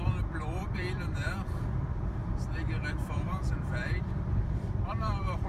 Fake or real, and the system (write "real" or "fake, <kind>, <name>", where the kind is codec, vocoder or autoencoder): fake, vocoder, BigVGAN v2